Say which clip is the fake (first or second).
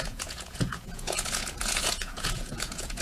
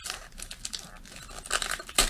first